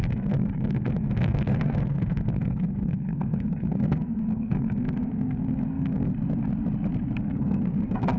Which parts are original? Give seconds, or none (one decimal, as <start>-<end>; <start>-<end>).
6.1-7.2